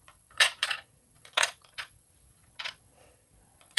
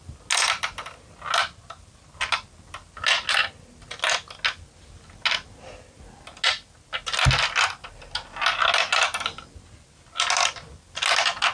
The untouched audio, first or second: second